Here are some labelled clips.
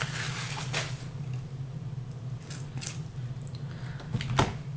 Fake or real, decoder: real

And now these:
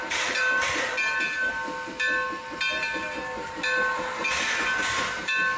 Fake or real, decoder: real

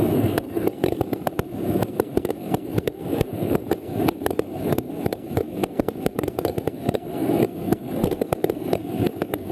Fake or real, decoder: fake, codec, SNAC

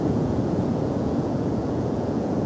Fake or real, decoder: fake, vocoder, Vocos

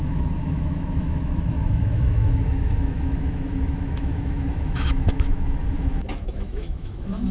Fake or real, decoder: fake, autoencoder, DAC-VAE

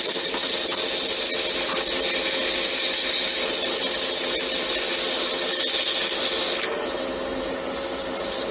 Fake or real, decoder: real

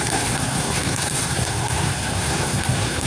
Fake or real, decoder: fake, codec, SNAC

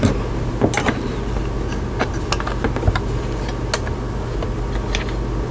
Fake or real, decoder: real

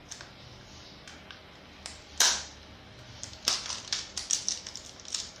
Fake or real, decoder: real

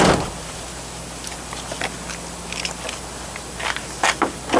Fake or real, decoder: real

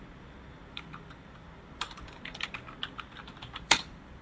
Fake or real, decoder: fake, vocoder, BigVGAN v2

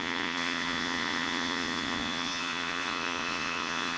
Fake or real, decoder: fake, vocoder, Vocos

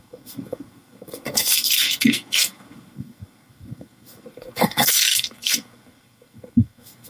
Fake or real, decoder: fake, codec, SNAC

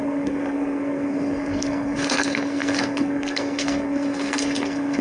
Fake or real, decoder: fake, codec, SNAC